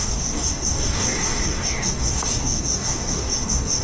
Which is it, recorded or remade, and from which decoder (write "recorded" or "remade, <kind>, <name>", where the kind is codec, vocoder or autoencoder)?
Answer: remade, codec, DAC